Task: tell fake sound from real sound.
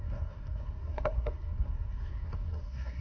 fake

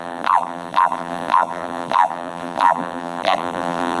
fake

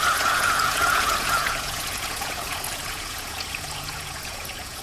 fake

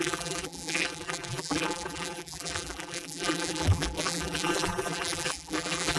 fake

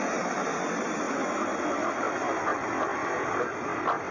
fake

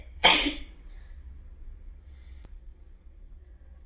fake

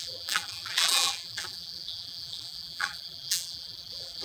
fake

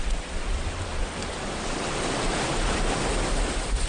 real